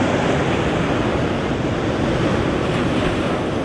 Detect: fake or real real